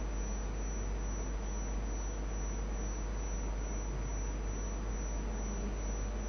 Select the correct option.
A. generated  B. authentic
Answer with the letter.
B